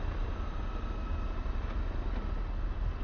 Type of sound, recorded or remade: recorded